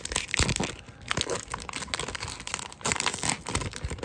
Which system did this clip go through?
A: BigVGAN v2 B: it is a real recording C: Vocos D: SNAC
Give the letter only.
B